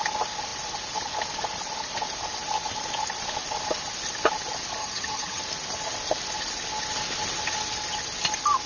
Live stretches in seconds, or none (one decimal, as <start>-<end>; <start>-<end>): 0.0-4.8; 5.4-8.7